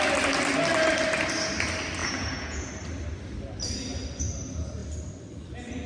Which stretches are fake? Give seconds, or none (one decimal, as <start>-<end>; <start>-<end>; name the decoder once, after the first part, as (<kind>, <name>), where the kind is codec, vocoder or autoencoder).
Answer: 2.0-2.7 (vocoder, Vocos)